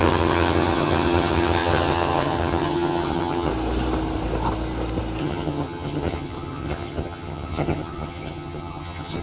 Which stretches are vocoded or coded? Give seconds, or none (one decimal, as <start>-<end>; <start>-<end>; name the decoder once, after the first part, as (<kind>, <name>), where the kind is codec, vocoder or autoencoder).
0.0-3.5 (vocoder, HiFi-GAN); 5.2-9.2